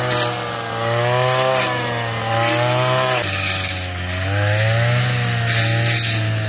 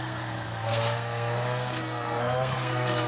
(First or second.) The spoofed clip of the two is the second